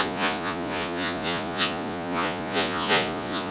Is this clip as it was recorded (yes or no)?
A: no